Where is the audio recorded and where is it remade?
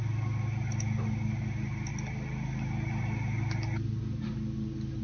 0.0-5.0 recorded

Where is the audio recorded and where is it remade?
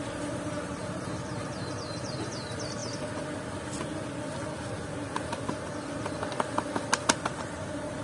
0.0-2.8 remade; 2.8-7.4 recorded; 7.4-8.0 remade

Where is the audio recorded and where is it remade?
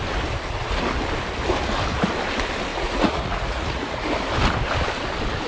0.0-2.7 recorded; 2.7-4.0 remade; 4.0-5.5 recorded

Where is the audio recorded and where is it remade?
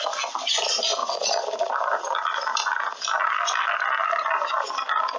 0.0-5.2 recorded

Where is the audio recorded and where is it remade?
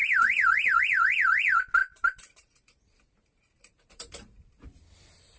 0.0-0.8 remade; 0.8-1.8 recorded; 1.8-4.9 remade; 4.9-5.4 recorded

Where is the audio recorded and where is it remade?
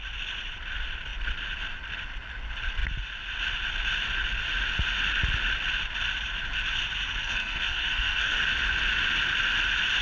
0.0-7.2 recorded; 7.2-8.4 remade; 8.4-10.0 recorded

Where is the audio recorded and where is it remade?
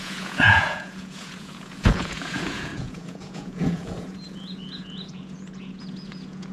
0.0-6.5 remade